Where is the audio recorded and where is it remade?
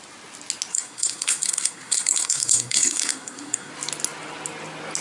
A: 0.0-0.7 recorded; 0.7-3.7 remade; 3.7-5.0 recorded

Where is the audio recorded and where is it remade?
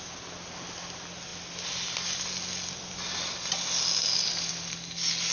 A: 0.0-5.3 recorded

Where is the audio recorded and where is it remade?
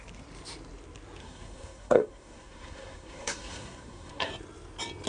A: 0.0-1.2 recorded; 1.2-4.3 remade; 4.3-5.1 recorded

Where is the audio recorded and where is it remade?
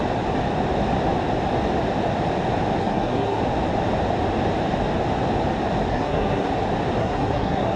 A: 0.0-2.8 recorded; 2.8-3.4 remade; 3.4-5.9 recorded; 5.9-6.5 remade; 6.5-7.0 recorded; 7.0-7.8 remade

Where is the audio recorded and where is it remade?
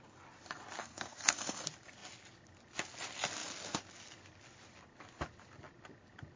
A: 0.0-0.8 recorded; 0.8-1.6 remade; 1.6-6.4 recorded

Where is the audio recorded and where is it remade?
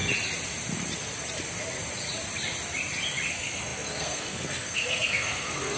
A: 0.0-3.3 recorded; 3.3-5.8 remade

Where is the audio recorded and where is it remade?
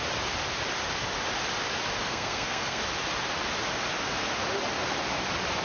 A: 0.0-2.0 recorded; 2.0-2.8 remade; 2.8-5.6 recorded